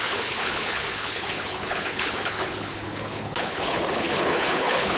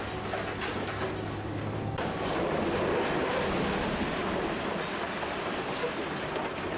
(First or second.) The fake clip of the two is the first